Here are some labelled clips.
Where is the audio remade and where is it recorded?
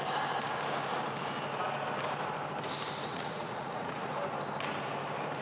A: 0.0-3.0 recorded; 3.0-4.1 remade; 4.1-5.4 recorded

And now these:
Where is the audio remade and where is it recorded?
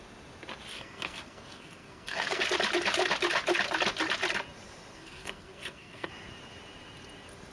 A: 0.0-0.7 recorded; 0.7-2.4 remade; 2.4-4.9 recorded; 4.9-6.1 remade; 6.1-7.5 recorded